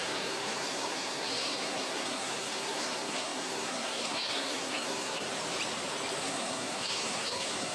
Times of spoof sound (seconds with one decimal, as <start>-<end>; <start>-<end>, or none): 0.0-5.3; 6.2-7.7